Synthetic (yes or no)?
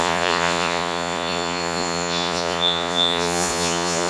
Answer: yes